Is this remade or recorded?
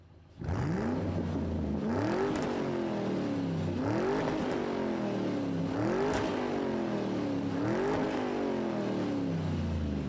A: recorded